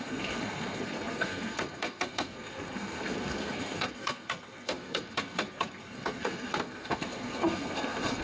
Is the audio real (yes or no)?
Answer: no